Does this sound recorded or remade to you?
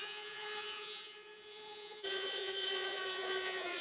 remade